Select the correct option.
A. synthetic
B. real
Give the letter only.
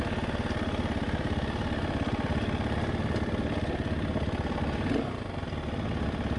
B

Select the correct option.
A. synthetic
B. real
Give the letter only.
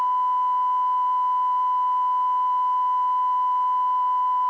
B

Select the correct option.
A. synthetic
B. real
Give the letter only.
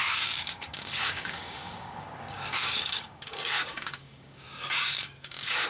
A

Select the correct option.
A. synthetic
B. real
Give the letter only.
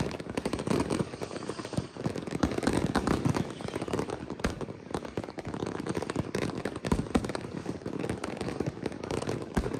A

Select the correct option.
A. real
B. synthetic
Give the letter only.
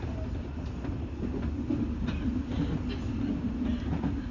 A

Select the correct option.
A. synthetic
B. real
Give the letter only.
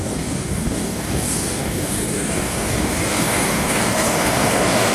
A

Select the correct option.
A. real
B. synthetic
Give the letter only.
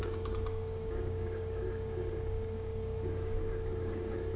B